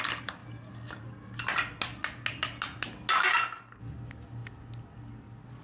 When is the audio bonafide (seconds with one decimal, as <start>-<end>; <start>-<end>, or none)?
0.0-5.6